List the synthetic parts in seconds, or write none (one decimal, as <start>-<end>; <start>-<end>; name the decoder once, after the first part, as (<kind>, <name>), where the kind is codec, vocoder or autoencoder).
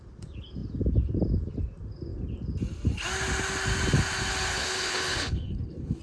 4.5-6.0 (codec, HILCodec)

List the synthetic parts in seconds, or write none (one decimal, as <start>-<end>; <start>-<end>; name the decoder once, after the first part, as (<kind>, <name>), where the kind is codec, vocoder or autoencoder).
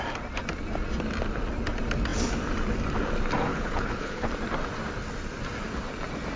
3.5-4.3 (codec, HILCodec)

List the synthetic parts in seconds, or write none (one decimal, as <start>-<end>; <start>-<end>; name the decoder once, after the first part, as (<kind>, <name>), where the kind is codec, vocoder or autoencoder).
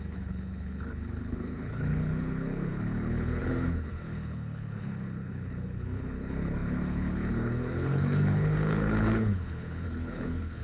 0.0-10.6 (codec, HILCodec)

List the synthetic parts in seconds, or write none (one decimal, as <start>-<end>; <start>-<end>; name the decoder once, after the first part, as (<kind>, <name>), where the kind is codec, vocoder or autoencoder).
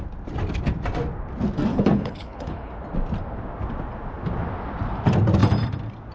1.7-2.7 (codec, HILCodec)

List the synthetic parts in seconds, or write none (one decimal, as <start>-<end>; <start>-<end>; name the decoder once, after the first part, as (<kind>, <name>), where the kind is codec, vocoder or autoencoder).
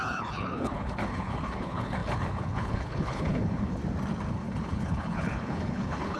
0.0-3.8 (codec, HILCodec); 4.3-6.2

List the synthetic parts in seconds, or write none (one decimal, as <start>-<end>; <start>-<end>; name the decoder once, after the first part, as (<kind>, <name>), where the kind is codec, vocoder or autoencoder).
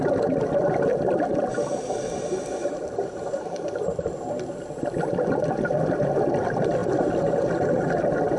none